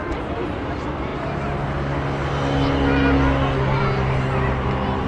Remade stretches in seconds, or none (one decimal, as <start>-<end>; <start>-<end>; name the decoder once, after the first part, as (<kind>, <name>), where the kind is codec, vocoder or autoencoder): none